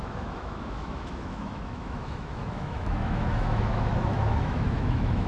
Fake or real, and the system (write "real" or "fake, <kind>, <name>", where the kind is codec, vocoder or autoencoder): fake, autoencoder, DAC-VAE